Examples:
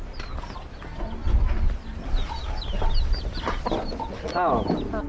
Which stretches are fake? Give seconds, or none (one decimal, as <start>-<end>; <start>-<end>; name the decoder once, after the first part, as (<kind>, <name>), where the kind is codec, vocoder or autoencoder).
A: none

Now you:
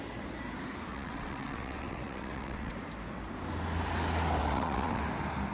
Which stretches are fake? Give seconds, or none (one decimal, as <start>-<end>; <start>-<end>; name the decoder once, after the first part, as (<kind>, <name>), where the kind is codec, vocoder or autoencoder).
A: 0.9-2.7 (vocoder, WaveNeXt); 4.4-5.0

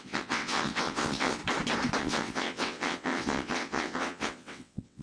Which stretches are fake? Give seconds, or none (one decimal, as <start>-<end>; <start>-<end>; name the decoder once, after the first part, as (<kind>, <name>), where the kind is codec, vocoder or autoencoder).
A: 0.0-1.4 (vocoder, WaveNeXt); 2.0-5.0